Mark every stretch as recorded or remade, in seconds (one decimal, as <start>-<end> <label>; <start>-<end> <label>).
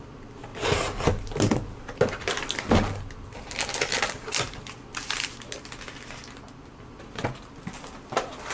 0.0-0.5 recorded; 0.5-5.3 remade; 5.3-8.5 recorded